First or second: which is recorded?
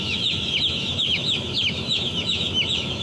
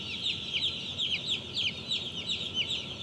second